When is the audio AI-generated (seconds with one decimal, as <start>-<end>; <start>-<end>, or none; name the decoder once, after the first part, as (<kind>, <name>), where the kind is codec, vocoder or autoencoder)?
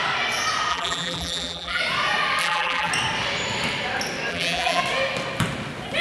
0.7-1.8 (vocoder, BigVGAN v2); 2.4-2.9; 4.3-4.8